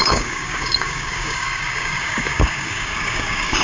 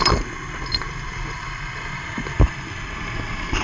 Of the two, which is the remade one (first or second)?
first